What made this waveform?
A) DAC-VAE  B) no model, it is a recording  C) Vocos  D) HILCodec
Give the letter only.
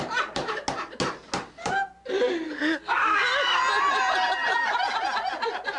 B